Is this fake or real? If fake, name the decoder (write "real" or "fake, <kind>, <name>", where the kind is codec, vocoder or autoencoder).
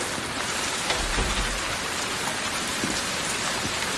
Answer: real